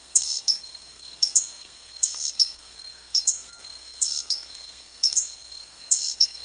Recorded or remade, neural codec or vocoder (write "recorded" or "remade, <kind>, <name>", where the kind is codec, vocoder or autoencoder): remade, codec, SNAC